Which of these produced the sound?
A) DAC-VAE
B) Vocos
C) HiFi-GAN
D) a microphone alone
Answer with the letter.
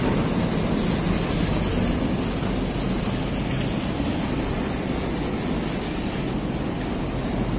D